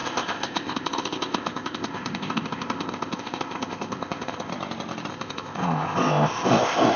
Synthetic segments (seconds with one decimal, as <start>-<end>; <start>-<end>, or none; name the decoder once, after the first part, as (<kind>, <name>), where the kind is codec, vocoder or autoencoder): 0.0-4.5 (codec, ZipCodec); 5.1-7.0

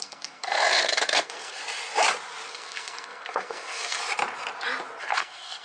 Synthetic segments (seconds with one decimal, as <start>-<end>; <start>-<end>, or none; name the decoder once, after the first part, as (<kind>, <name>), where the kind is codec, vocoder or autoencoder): 0.0-1.6 (codec, SNAC); 2.5-4.0; 5.0-5.6

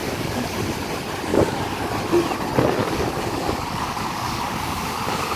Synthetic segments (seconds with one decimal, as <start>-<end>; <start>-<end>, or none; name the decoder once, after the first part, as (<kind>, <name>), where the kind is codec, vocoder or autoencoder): 0.0-0.5 (codec, DAC); 1.3-1.9; 2.8-5.4

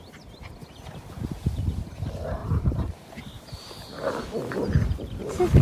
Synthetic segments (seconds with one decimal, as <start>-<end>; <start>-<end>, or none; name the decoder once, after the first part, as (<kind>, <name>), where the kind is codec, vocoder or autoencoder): 2.4-4.1 (vocoder, BigVGAN v2)

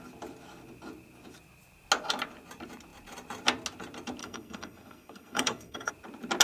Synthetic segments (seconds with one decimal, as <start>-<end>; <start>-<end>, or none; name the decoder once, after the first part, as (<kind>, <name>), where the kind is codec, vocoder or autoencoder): 4.2-5.9 (codec, SNAC)

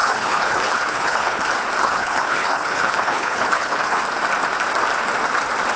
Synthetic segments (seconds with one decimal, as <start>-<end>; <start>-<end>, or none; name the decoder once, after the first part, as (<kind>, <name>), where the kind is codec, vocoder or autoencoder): 0.0-1.4 (codec, HILCodec); 1.8-4.0